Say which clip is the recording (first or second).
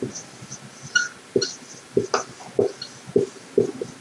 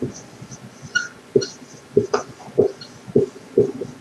first